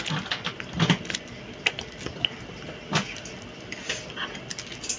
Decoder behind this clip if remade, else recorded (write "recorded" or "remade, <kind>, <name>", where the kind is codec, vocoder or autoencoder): recorded